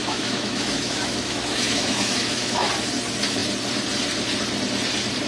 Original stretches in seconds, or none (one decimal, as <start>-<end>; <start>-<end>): 2.7-5.3